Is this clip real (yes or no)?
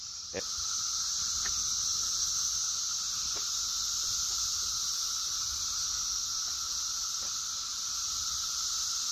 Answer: yes